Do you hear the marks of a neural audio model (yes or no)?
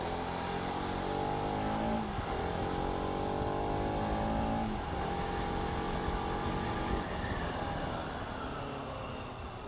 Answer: no